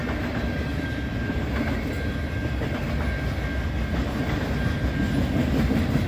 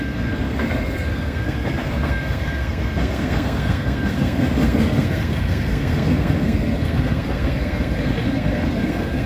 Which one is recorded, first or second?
first